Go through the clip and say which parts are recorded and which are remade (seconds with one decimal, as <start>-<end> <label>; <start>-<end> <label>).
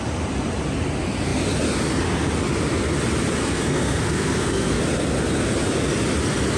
0.0-3.4 recorded; 3.4-4.8 remade; 4.8-6.6 recorded